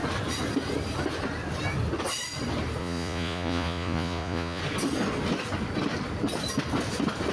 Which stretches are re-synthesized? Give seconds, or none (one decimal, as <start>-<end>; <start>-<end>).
2.8-4.6